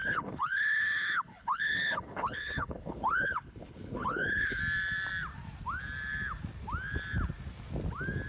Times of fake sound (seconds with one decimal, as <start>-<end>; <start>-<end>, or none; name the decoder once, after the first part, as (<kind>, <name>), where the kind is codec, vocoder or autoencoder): 0.0-4.6 (codec, HILCodec)